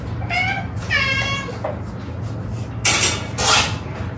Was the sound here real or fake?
real